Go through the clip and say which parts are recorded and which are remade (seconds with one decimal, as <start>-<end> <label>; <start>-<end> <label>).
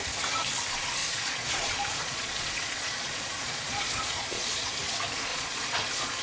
0.0-1.0 recorded; 1.0-4.7 remade; 4.7-5.3 recorded; 5.3-6.2 remade